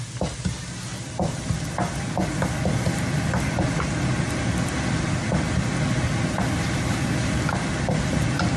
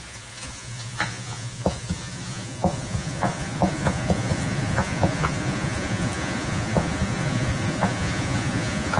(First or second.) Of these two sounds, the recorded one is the first